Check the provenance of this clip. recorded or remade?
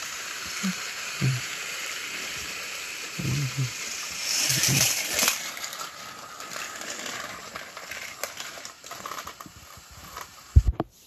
remade